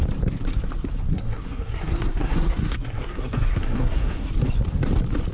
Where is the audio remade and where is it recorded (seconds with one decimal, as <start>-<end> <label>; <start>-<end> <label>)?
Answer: 0.0-1.1 recorded; 1.1-4.3 remade; 4.3-5.3 recorded